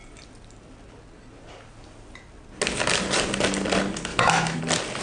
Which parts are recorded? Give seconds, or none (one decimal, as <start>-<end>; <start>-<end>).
0.0-4.1; 4.6-5.0